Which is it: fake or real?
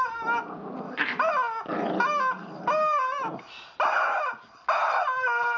real